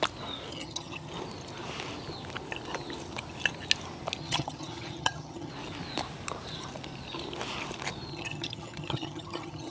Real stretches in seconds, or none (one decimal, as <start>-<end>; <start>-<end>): 0.0-0.5; 1.1-4.2; 5.5-8.1